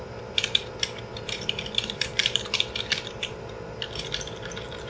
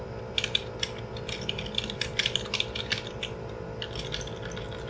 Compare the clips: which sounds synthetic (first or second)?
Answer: first